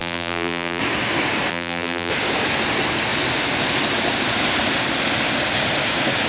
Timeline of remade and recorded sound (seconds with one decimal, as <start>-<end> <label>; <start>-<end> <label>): 0.0-0.8 remade; 0.8-1.5 recorded; 1.5-2.1 remade; 2.1-6.3 recorded